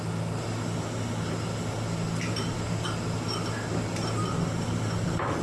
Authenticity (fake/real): real